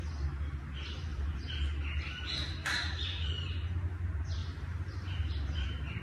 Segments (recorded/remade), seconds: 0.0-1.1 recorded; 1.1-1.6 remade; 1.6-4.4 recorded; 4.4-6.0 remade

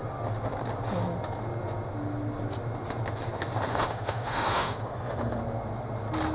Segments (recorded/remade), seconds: 0.0-3.7 recorded; 3.7-5.4 remade; 5.4-6.3 recorded

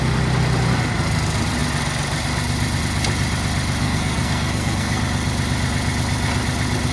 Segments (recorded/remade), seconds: 0.0-3.8 recorded; 3.8-5.0 remade; 5.0-6.9 recorded